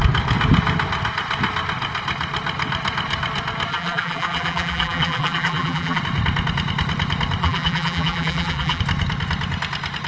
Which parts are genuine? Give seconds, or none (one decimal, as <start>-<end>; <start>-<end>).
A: 0.0-3.7; 6.0-7.4; 8.8-10.1